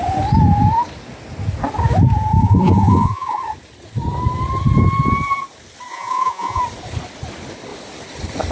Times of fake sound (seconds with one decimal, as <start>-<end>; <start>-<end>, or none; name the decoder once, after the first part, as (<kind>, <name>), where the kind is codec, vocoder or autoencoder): 2.4-3.4 (vocoder, Vocos); 5.9-6.6